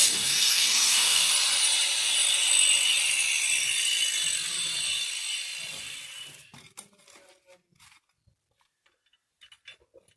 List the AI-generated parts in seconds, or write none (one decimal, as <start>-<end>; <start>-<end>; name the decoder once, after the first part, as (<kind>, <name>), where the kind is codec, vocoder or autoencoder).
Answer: 0.0-1.3 (codec, DAC)